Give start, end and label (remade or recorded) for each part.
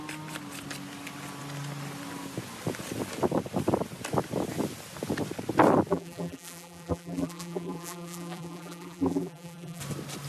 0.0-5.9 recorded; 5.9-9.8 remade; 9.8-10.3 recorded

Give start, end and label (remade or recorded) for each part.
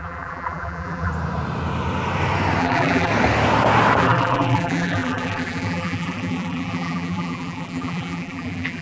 0.0-1.1 remade; 1.1-2.6 recorded; 2.6-3.1 remade; 3.1-4.0 recorded; 4.0-8.8 remade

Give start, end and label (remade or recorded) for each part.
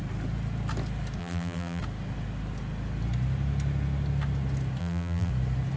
0.0-1.2 recorded; 1.2-1.8 remade; 1.8-4.8 recorded; 4.8-5.3 remade; 5.3-5.8 recorded